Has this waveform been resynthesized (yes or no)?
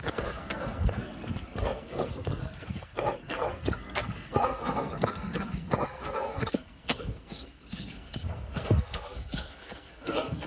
yes